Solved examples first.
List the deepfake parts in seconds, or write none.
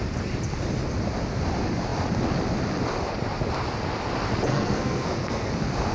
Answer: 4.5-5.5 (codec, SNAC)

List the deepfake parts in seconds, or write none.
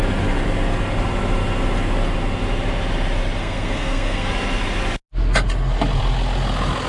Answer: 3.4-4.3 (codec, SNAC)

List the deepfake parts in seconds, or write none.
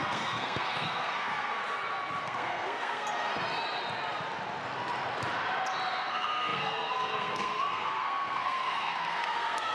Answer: 0.0-1.6 (codec, SNAC); 2.2-3.3; 5.9-9.7